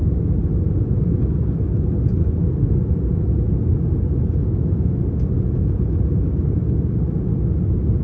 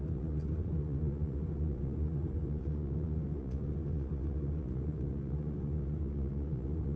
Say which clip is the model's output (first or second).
second